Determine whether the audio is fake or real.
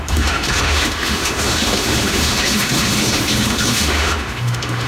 fake